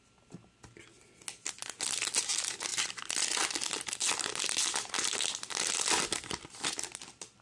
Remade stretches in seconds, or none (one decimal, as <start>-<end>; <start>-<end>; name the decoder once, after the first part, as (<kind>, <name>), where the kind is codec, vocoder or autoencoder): none

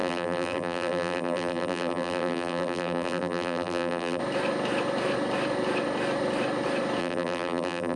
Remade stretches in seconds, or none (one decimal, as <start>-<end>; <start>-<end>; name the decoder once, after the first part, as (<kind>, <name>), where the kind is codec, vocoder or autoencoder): 0.0-4.2 (vocoder, BigVGAN v2); 7.0-8.0

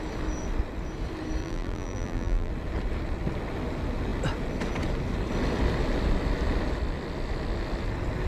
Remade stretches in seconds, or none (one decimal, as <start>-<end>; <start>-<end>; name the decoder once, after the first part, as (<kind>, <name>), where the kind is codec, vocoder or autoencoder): 1.4-2.5 (vocoder, BigVGAN v2)

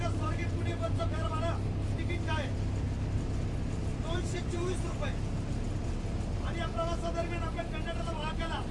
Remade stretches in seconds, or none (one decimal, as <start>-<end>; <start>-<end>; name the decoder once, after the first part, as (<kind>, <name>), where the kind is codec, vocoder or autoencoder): 0.4-1.4 (vocoder, BigVGAN v2); 3.9-4.9

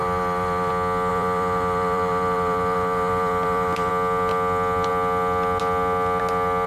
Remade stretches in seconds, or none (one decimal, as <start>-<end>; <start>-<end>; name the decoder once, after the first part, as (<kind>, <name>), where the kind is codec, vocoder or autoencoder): 0.0-0.7 (vocoder, BigVGAN v2); 1.1-3.9

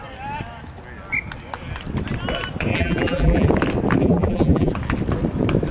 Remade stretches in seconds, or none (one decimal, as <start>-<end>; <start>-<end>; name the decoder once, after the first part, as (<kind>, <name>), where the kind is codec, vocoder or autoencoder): 2.7-3.5 (vocoder, BigVGAN v2); 4.0-4.7